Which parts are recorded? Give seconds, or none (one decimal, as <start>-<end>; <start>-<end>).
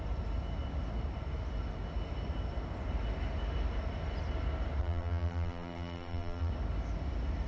0.0-4.8; 6.5-7.5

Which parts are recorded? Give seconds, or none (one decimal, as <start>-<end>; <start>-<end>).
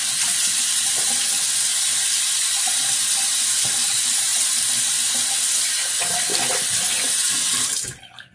4.3-5.6; 6.3-7.0